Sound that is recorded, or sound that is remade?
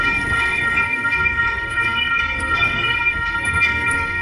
remade